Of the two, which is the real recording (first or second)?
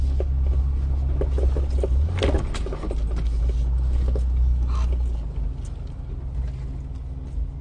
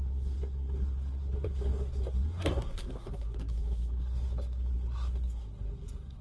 first